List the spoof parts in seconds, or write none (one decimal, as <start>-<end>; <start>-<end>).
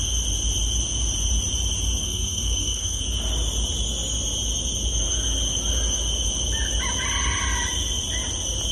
2.0-3.0